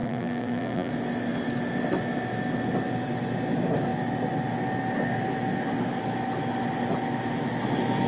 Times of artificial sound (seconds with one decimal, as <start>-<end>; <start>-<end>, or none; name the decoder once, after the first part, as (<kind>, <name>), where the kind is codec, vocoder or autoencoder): 0.0-0.9 (vocoder, BigVGAN v2)